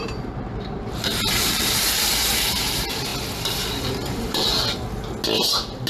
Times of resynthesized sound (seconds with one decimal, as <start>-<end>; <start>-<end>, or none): 0.0-3.1; 3.8-4.5